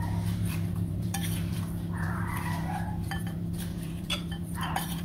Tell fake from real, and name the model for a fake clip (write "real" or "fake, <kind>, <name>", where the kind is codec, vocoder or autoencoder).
fake, vocoder, BigVGAN v2